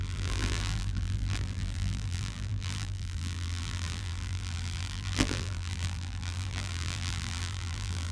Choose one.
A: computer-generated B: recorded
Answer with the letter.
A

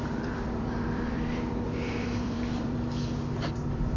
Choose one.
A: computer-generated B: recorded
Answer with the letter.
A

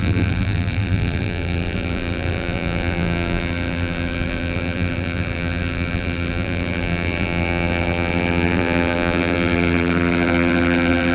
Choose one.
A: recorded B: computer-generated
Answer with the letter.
B